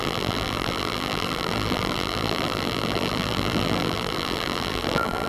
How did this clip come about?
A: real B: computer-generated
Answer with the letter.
B